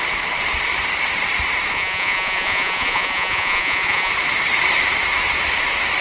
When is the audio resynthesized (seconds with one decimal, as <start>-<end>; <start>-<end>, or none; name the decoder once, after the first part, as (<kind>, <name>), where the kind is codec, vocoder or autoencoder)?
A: 1.7-4.1 (vocoder, Vocos)